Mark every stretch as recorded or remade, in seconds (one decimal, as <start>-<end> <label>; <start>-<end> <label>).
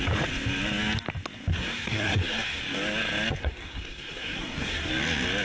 0.0-1.5 recorded; 1.5-2.6 remade; 2.6-3.4 recorded; 3.4-4.9 remade; 4.9-5.4 recorded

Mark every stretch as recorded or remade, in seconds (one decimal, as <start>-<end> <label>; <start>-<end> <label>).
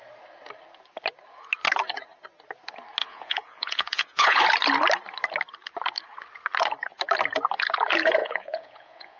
0.0-3.0 recorded; 3.0-4.4 remade; 4.4-8.2 recorded; 8.2-9.2 remade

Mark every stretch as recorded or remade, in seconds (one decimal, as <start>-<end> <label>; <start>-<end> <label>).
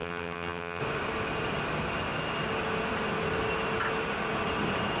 0.0-0.8 remade; 0.8-5.0 recorded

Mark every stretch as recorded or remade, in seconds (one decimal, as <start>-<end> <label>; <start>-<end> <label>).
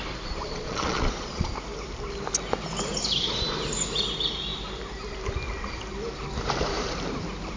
0.0-0.4 recorded; 0.4-1.5 remade; 1.5-7.6 recorded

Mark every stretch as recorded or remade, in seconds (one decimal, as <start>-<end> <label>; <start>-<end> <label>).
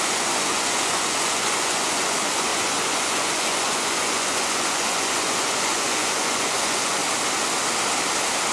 0.0-7.0 remade; 7.0-8.5 recorded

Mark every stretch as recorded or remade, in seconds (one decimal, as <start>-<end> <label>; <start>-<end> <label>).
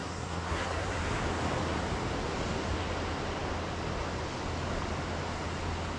0.0-1.0 remade; 1.0-6.0 recorded